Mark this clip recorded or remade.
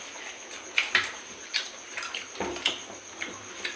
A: recorded